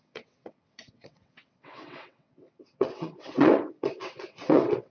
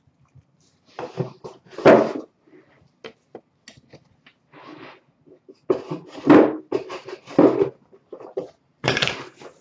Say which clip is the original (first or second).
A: second